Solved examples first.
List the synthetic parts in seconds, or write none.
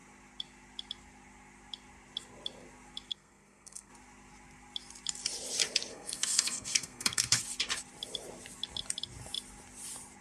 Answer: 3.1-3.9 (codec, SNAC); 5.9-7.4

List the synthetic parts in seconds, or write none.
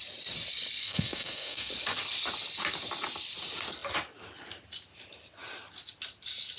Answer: 0.8-1.7 (codec, SNAC)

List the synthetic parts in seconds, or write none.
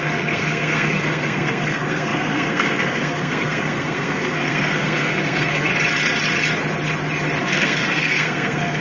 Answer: 0.0-5.7 (codec, SNAC); 7.4-8.8